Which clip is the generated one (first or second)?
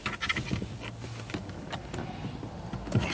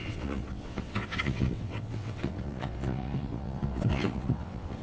second